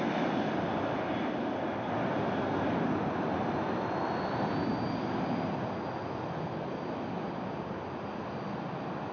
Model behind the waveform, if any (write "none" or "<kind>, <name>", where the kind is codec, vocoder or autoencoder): none